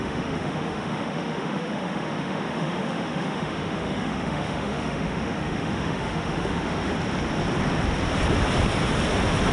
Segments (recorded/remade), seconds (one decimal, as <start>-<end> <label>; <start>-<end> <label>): 0.0-6.9 remade; 6.9-9.5 recorded